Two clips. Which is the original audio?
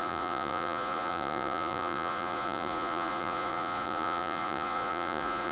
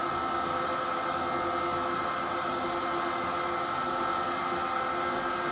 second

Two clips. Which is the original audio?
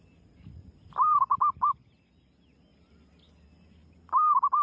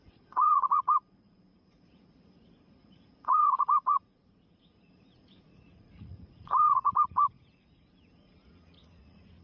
first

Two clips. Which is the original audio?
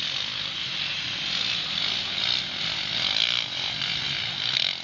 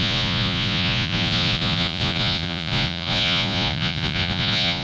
first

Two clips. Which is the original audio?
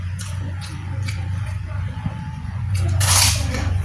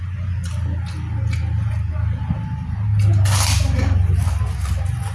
second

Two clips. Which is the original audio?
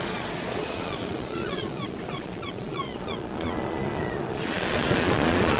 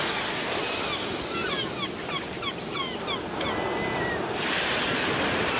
second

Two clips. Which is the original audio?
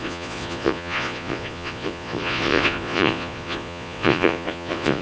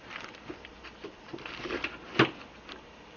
second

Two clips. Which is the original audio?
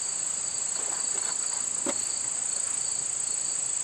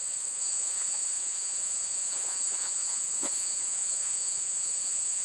first